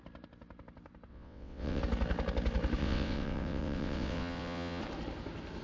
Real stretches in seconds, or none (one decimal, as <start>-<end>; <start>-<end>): 0.0-1.1; 1.8-2.8; 4.8-5.6